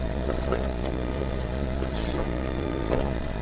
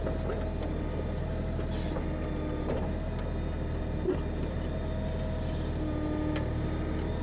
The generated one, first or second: first